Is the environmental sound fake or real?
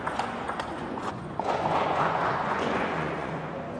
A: fake